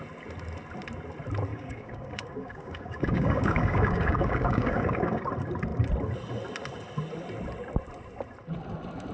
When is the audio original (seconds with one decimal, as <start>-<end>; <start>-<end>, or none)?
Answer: 0.0-1.5; 5.3-9.1